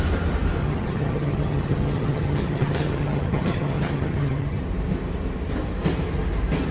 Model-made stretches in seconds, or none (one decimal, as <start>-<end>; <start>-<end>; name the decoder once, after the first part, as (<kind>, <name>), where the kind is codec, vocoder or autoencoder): 0.6-4.6 (vocoder, HiFi-GAN)